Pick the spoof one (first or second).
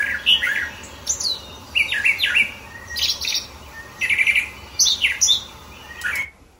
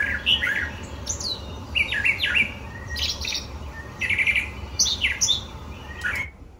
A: second